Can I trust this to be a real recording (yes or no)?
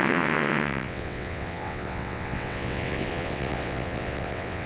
no